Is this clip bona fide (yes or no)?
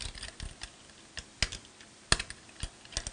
yes